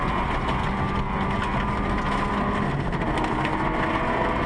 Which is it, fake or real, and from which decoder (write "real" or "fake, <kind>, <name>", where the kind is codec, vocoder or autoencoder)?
real